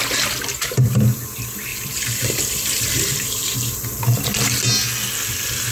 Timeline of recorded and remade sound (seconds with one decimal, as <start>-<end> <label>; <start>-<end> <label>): 0.0-0.6 recorded; 0.6-1.2 remade; 1.2-1.7 recorded; 1.7-2.3 remade; 2.3-3.1 recorded; 3.1-4.2 remade; 4.2-5.7 recorded